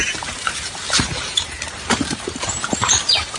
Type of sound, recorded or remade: remade